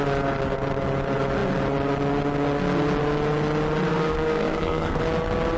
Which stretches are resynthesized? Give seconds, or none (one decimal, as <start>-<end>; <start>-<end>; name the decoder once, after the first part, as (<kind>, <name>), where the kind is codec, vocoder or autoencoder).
3.9-5.0 (codec, SNAC)